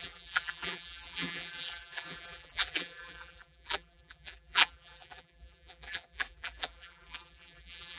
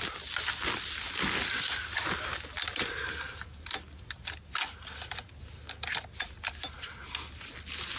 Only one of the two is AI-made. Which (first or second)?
first